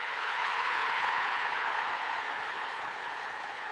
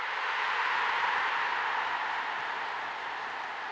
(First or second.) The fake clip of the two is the first